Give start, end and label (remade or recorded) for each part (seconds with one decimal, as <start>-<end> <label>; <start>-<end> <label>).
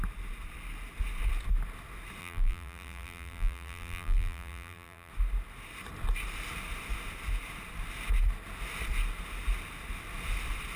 0.0-2.2 recorded; 2.2-5.1 remade; 5.1-10.8 recorded